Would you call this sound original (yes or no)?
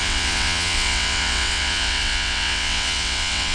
no